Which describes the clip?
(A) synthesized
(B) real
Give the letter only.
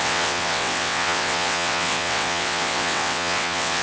A